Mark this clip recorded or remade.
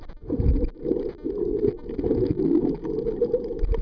recorded